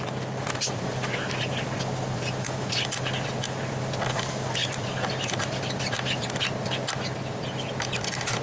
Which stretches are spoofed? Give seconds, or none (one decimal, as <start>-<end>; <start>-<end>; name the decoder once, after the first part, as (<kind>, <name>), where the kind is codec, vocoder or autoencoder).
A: none